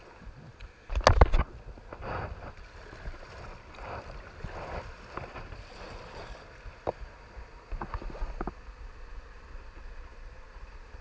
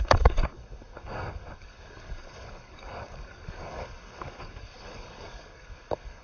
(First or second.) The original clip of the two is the first